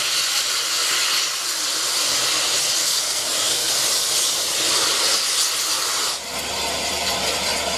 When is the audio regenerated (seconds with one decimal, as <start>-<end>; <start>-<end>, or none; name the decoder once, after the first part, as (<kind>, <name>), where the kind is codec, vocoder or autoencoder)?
2.8-3.7 (codec, SNAC)